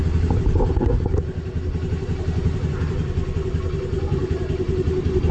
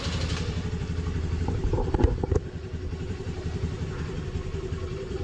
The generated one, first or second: second